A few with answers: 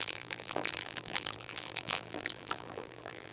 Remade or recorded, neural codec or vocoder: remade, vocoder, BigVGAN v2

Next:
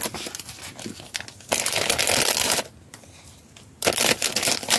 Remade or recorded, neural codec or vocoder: recorded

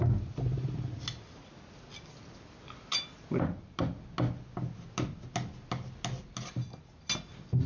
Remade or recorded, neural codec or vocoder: recorded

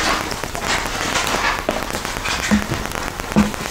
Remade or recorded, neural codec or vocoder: recorded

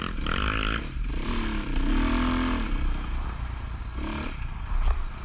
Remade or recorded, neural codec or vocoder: recorded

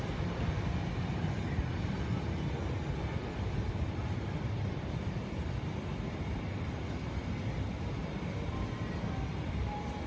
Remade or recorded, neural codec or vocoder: recorded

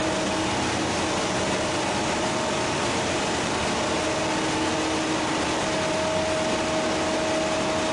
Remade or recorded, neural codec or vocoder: recorded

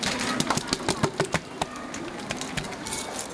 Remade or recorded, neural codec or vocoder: recorded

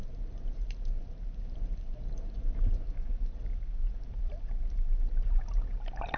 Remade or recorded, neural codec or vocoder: remade, vocoder, BigVGAN v2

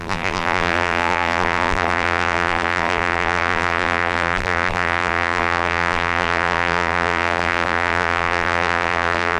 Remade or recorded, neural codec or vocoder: remade, vocoder, BigVGAN v2